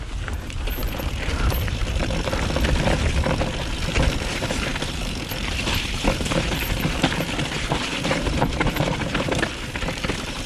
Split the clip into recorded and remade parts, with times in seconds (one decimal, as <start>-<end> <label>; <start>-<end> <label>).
0.0-1.8 remade; 1.8-4.3 recorded; 4.3-10.5 remade